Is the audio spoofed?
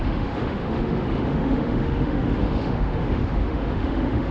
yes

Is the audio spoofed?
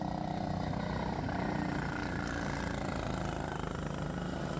no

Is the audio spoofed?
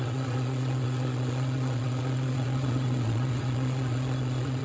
yes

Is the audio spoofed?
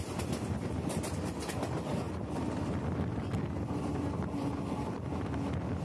no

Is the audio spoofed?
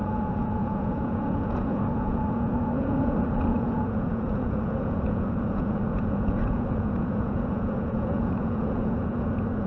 yes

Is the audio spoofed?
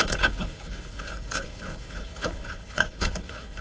yes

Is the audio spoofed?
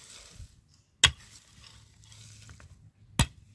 no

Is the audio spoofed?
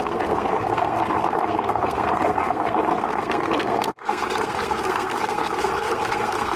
yes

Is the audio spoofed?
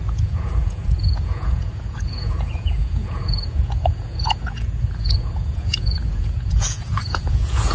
yes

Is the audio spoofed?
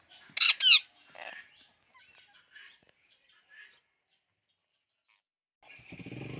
no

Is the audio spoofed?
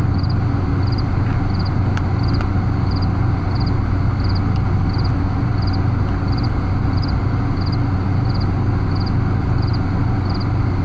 no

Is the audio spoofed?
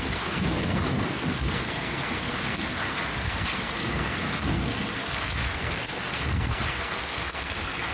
yes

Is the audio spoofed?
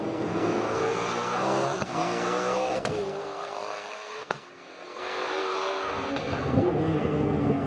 yes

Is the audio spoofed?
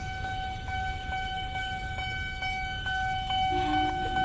yes